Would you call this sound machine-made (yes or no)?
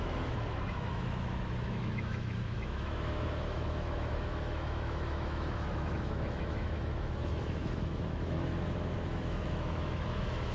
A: yes